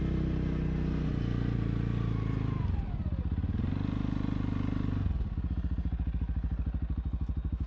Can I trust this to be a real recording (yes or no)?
yes